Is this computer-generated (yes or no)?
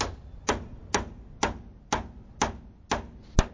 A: no